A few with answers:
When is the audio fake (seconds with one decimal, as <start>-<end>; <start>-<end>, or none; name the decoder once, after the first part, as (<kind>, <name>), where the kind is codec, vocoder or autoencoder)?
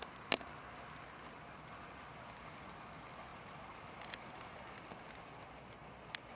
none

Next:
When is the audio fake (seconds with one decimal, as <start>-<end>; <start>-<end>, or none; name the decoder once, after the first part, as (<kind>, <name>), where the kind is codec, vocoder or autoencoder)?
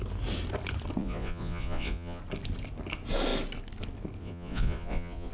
1.0-2.2 (vocoder, Vocos); 4.2-5.3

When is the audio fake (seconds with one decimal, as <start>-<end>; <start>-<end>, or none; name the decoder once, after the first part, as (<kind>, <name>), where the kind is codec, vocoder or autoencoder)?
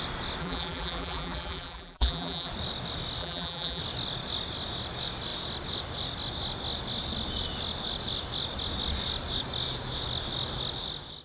0.4-2.5 (vocoder, BigVGAN v2); 3.2-3.8